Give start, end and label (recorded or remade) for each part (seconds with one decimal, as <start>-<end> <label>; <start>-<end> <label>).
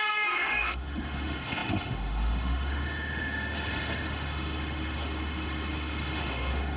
0.0-6.8 remade